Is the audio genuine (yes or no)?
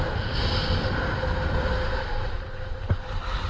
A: yes